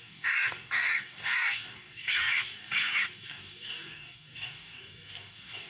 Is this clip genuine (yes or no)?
no